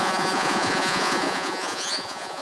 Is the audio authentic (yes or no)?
no